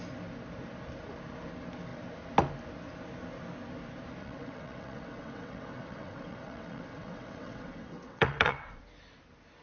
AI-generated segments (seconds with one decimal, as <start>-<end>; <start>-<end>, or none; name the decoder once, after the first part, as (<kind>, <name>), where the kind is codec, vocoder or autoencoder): 4.2-8.8 (vocoder, WaveNeXt)